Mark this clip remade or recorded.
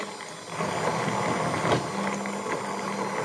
recorded